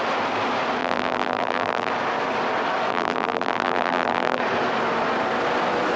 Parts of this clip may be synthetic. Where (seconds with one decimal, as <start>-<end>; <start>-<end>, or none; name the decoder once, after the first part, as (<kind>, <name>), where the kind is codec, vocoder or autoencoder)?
0.8-1.9 (vocoder, BigVGAN v2); 2.9-4.4

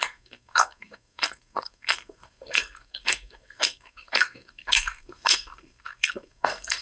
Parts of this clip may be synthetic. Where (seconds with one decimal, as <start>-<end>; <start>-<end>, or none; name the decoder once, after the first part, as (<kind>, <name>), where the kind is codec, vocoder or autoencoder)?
0.0-6.8 (codec, SNAC)